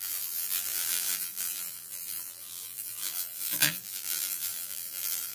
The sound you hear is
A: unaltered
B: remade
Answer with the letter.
B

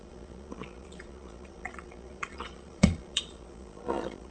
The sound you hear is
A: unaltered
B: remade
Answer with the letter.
B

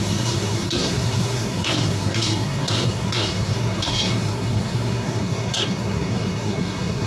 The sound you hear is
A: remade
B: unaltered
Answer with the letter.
A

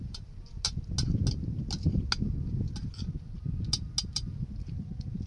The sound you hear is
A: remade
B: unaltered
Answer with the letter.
B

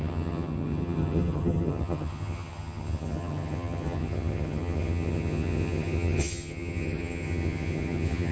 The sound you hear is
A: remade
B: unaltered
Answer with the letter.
A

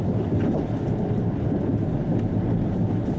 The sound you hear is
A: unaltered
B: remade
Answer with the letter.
A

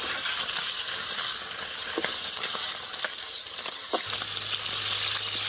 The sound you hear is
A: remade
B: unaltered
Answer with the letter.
B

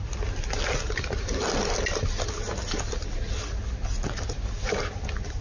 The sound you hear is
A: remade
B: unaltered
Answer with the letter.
B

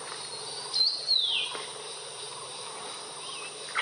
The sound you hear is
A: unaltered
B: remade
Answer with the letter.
A